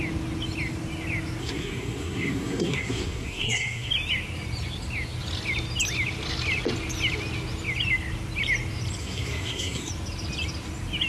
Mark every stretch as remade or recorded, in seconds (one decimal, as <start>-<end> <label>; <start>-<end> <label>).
0.0-1.4 recorded; 1.4-3.9 remade; 3.9-9.0 recorded; 9.0-9.9 remade; 9.9-11.1 recorded